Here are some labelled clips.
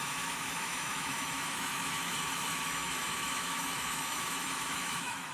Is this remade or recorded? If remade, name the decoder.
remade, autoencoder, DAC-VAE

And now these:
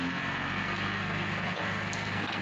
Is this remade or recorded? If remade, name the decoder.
remade, codec, SNAC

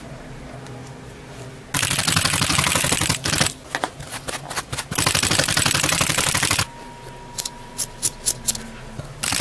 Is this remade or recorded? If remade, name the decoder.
recorded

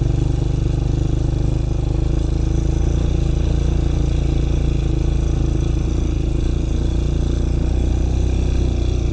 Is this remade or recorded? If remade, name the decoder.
recorded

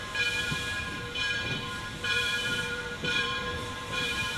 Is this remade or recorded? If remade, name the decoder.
remade, vocoder, BigVGAN v2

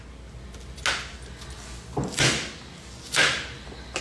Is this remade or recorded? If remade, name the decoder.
recorded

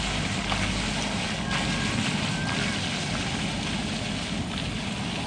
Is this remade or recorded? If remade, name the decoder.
recorded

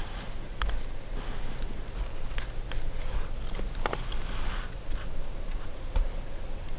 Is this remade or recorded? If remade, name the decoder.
recorded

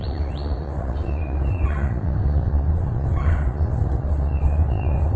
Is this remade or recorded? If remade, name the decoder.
remade, vocoder, WaveNeXt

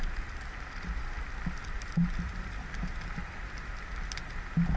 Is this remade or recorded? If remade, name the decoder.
remade, vocoder, BigVGAN v2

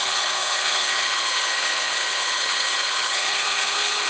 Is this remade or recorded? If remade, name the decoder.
remade, codec, HILCodec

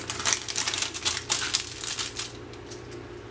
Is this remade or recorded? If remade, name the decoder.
recorded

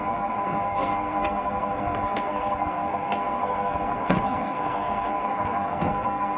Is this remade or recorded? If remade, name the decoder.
remade, codec, SNAC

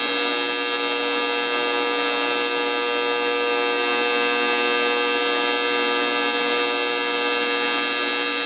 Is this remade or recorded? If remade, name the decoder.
recorded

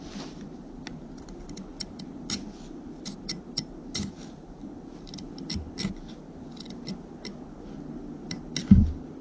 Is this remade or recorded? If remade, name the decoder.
recorded